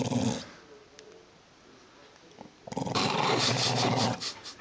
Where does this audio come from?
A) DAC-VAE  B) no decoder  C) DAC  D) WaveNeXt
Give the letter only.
B